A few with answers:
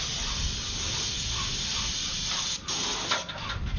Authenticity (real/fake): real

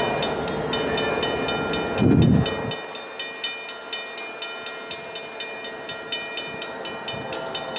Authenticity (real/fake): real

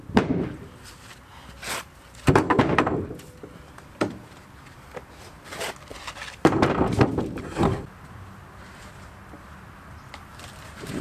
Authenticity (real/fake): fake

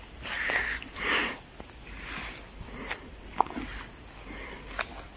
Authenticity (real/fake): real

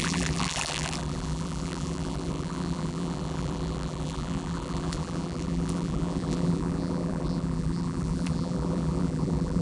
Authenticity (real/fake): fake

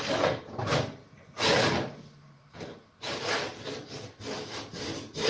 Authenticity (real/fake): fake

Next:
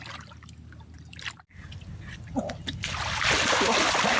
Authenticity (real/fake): real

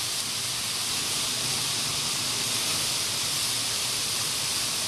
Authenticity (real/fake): real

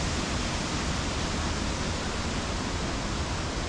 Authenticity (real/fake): real